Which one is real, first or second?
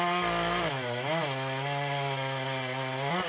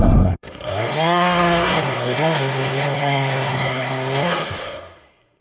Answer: first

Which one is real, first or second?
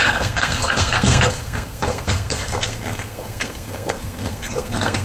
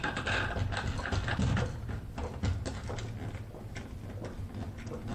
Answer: second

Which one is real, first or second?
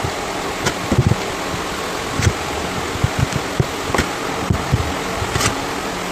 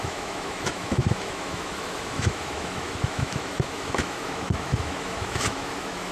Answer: first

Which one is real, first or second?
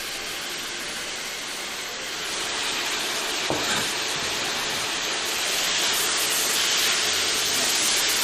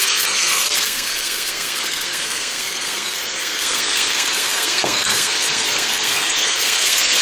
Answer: first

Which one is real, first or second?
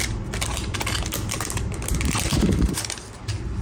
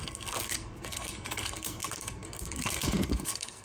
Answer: first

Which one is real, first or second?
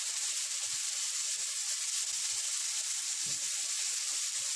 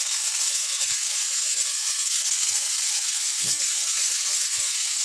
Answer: first